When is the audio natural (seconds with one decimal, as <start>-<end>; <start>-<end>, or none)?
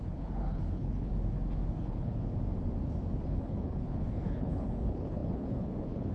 1.1-1.8; 2.3-3.1